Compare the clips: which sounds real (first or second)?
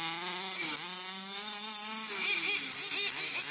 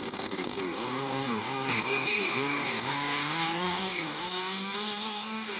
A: first